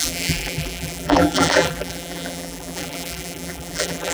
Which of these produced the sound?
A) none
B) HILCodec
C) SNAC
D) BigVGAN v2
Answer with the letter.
D